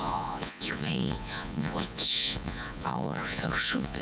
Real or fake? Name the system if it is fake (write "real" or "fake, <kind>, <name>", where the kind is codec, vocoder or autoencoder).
fake, vocoder, Vocos